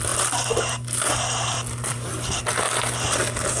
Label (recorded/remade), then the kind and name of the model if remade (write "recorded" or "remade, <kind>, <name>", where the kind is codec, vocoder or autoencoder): recorded